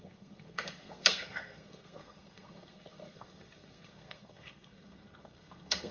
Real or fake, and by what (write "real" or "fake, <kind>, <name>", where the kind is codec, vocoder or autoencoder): fake, codec, SNAC